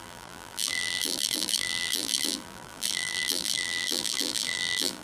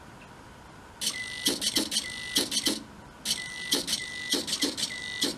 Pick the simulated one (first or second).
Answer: first